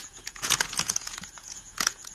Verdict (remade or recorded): remade